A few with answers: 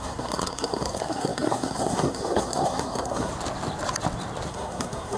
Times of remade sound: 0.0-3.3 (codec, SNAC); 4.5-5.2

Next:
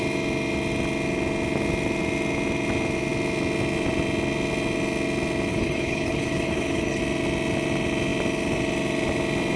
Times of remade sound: 5.5-7.0 (codec, HILCodec)

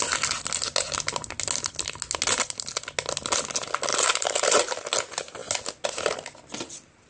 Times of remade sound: 3.9-4.8 (vocoder, BigVGAN v2)

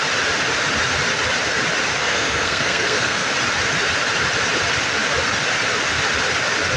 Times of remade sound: 2.0-3.3 (codec, SNAC)

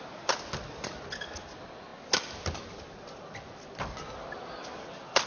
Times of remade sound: none